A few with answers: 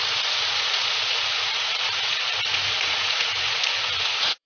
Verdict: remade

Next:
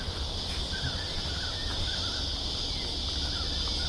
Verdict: recorded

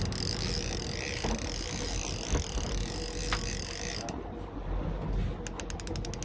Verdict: recorded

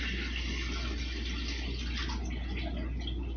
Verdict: recorded